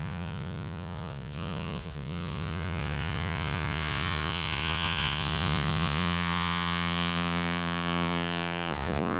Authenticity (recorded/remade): remade